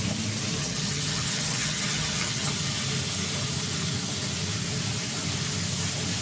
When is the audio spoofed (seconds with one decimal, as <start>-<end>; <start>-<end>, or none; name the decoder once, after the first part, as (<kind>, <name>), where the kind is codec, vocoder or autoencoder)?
0.6-2.5 (vocoder, HiFi-GAN)